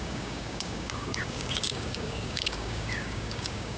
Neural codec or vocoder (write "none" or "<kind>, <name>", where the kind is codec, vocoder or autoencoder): codec, DAC